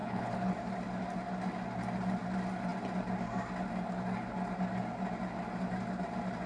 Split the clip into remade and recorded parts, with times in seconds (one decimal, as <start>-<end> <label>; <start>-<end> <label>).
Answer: 0.0-0.5 remade; 0.5-6.5 recorded